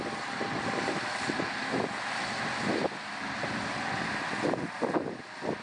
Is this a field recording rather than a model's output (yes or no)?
yes